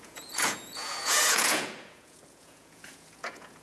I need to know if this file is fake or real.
fake